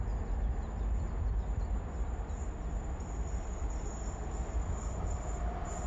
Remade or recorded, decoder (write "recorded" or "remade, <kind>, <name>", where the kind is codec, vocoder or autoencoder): recorded